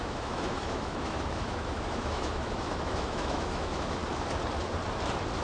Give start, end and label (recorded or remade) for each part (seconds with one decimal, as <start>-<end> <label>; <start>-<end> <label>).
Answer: 0.0-4.0 remade; 4.0-5.4 recorded